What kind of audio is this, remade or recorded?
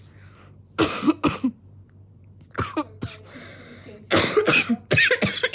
recorded